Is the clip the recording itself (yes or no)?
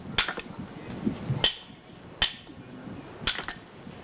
yes